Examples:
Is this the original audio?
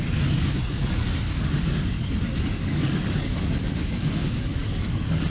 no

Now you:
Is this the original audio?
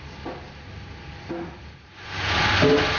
yes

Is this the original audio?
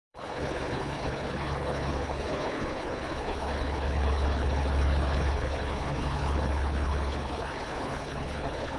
no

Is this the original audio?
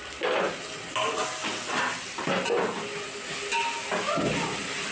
yes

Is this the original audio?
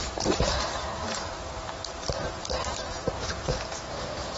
no